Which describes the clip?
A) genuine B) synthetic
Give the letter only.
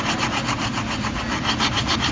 A